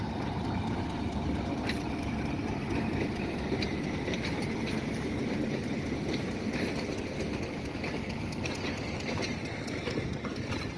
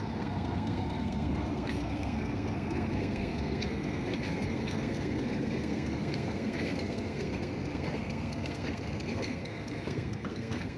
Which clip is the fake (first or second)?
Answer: second